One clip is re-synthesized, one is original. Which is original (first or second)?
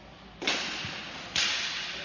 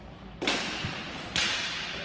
first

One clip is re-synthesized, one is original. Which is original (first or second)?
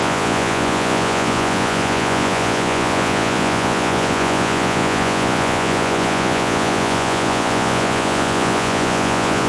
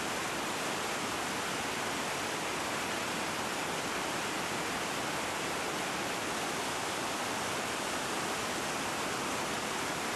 second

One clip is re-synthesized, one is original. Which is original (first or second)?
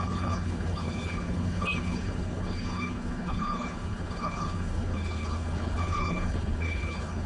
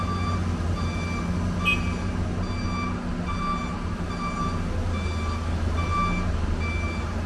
second